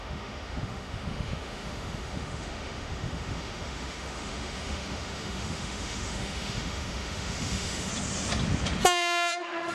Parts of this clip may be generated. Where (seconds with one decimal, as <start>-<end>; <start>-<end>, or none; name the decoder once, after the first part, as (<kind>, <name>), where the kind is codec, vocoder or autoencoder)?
0.0-7.9 (autoencoder, DAC-VAE); 8.8-9.7